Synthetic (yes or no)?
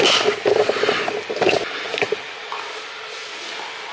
no